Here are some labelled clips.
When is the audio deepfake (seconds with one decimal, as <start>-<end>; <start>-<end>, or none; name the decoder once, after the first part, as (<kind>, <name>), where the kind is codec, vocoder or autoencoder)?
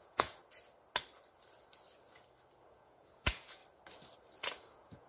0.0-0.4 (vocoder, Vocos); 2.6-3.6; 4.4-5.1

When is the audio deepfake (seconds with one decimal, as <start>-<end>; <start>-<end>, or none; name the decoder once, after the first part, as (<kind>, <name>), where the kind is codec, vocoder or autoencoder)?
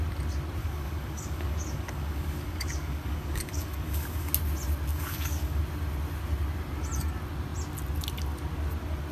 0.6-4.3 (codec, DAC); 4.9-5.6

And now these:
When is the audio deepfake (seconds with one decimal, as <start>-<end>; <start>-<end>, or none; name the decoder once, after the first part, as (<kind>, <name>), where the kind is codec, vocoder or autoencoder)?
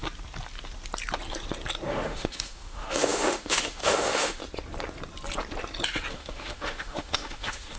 1.9-4.4 (autoencoder, DAC-VAE); 6.1-7.8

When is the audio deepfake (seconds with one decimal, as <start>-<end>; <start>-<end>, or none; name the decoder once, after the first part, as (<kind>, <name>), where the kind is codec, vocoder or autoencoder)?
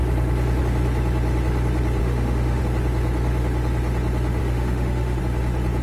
2.0-2.6 (autoencoder, DAC-VAE); 4.4-5.2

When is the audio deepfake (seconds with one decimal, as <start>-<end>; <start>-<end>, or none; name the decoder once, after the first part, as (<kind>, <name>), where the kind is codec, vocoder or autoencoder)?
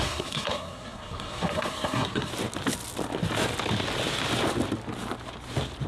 0.0-2.3 (codec, SNAC)